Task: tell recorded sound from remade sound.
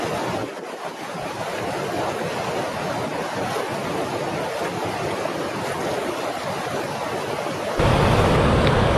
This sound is recorded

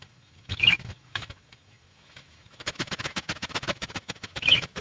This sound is remade